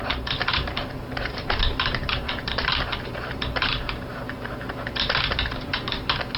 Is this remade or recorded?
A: remade